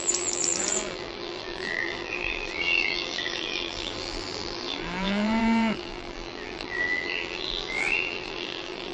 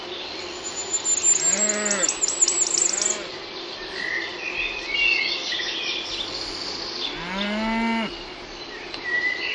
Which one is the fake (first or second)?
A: first